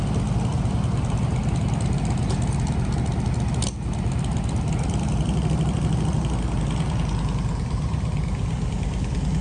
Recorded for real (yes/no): yes